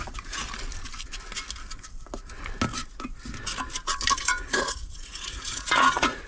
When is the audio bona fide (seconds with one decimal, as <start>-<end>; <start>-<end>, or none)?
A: 0.4-4.2